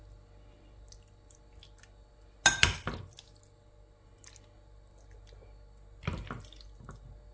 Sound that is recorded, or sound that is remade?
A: recorded